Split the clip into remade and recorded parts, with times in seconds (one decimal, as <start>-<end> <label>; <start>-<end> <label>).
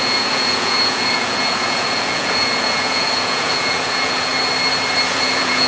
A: 0.0-4.3 remade; 4.3-5.1 recorded; 5.1-5.7 remade